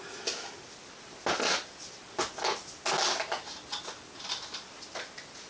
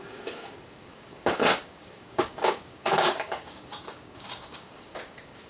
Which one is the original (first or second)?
first